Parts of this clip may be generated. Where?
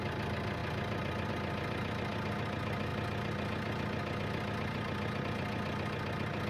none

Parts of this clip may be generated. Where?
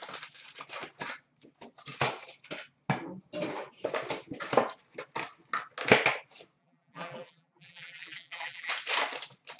6.6-8.7 (vocoder, BigVGAN v2)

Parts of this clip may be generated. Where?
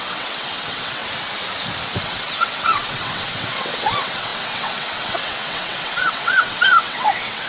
0.0-1.0 (vocoder, WaveNeXt); 2.0-7.5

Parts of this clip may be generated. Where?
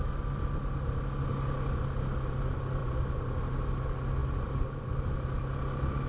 2.8-3.6 (vocoder, BigVGAN v2); 4.2-4.9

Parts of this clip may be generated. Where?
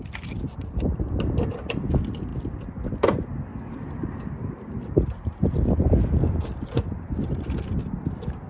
none